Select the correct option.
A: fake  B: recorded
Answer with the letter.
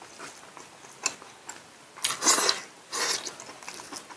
B